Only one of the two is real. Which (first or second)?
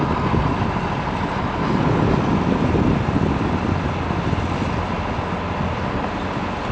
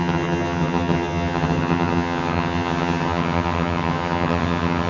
first